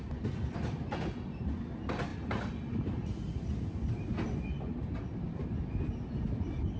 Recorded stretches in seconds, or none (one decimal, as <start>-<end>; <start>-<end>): 0.0-6.8